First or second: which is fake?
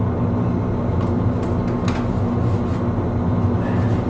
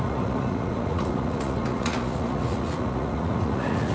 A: second